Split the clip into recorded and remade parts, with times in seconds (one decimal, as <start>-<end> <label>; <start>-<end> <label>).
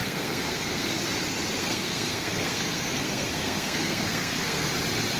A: 0.0-0.9 remade; 0.9-1.6 recorded; 1.6-4.7 remade; 4.7-5.2 recorded